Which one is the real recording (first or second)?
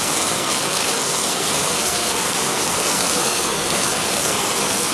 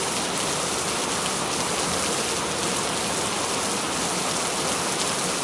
second